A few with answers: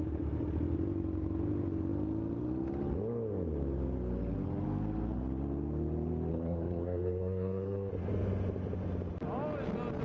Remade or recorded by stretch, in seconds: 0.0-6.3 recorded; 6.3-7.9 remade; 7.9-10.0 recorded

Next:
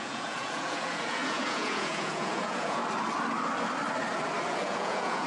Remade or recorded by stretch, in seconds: 0.0-2.8 remade; 2.8-4.5 recorded; 4.5-5.3 remade

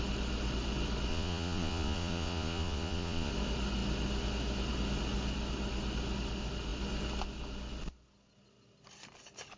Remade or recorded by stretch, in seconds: 0.0-1.1 recorded; 1.1-3.3 remade; 3.3-9.6 recorded

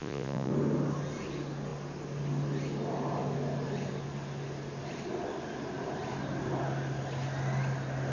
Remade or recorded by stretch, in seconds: 0.0-0.5 remade; 0.5-8.1 recorded

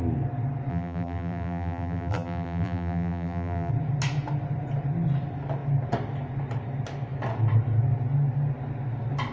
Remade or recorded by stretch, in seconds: 0.0-0.7 recorded; 0.7-3.7 remade; 3.7-9.3 recorded

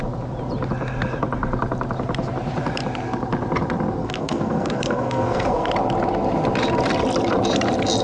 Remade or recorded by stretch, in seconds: 0.0-4.0 recorded; 4.0-5.7 remade; 5.7-8.0 recorded